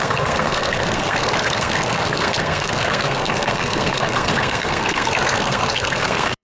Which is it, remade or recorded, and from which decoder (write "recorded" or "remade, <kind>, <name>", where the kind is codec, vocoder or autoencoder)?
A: remade, codec, SNAC